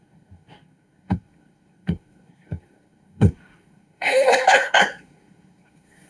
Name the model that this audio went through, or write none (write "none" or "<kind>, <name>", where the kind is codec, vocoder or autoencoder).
codec, SNAC